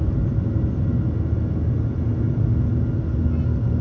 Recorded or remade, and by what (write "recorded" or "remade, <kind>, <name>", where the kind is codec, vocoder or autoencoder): recorded